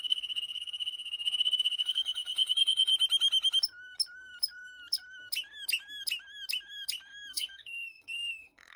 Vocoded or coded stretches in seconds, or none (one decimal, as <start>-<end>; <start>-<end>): 0.0-2.9; 7.3-8.8